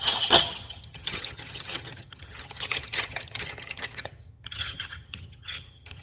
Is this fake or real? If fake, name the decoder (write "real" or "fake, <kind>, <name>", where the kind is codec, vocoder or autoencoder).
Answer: fake, vocoder, HiFi-GAN